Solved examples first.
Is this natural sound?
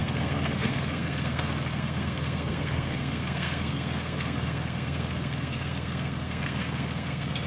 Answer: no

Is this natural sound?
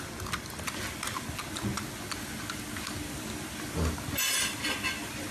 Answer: yes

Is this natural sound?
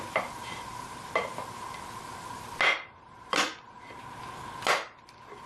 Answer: yes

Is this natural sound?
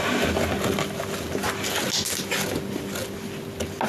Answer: yes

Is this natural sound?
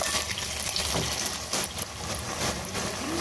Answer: yes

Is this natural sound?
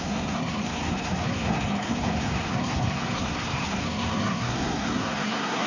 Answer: no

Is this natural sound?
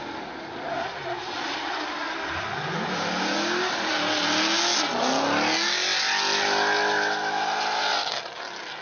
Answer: yes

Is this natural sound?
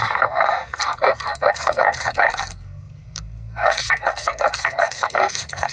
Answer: no